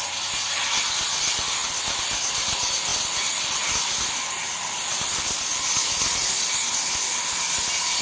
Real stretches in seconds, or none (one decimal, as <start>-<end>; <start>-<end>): 0.0-8.0

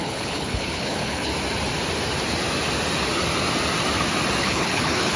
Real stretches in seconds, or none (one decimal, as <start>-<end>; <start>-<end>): 1.3-4.4

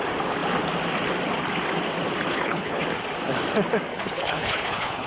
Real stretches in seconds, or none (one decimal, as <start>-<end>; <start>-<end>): 0.0-2.3; 2.8-3.9

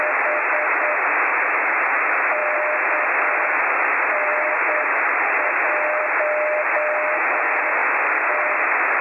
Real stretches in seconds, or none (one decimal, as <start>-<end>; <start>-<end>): 0.0-9.0